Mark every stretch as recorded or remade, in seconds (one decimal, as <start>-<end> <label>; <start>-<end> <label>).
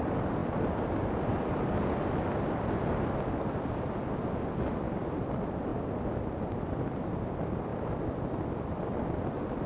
0.0-9.7 recorded